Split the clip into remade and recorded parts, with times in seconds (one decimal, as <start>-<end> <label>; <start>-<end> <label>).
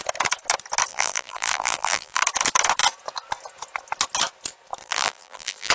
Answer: 0.0-0.9 recorded; 0.9-2.2 remade; 2.2-4.8 recorded; 4.8-5.7 remade